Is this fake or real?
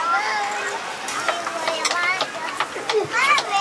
real